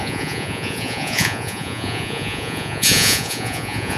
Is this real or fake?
fake